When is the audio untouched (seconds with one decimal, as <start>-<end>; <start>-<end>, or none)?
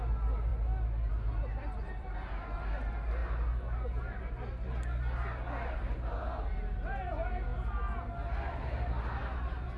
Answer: 0.0-9.8